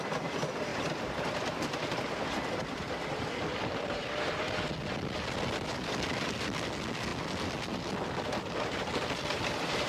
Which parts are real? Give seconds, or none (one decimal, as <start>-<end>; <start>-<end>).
0.0-0.7; 4.2-9.9